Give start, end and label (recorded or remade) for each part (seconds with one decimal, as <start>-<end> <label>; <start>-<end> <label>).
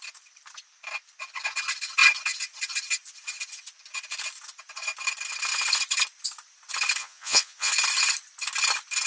0.0-7.0 recorded; 7.0-7.7 remade; 7.7-9.1 recorded